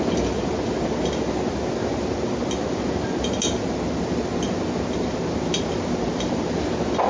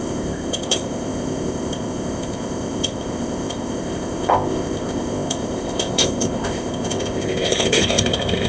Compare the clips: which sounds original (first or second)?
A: first